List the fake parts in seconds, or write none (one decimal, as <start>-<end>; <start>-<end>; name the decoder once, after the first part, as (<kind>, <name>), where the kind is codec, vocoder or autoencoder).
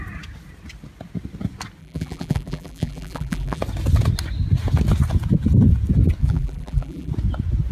1.8-3.6 (vocoder, BigVGAN v2); 6.2-7.1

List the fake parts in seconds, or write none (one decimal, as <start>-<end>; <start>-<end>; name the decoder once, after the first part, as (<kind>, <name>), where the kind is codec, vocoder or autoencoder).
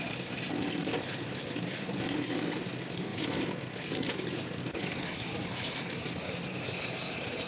none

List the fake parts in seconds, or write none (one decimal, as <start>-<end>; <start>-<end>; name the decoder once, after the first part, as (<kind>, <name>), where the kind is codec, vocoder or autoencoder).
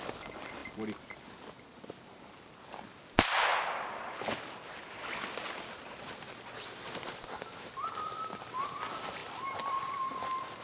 9.2-10.2 (vocoder, BigVGAN v2)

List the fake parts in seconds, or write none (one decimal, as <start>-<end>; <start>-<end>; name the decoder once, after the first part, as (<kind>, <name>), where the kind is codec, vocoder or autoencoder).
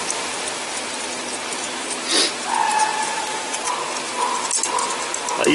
2.9-3.7 (vocoder, BigVGAN v2)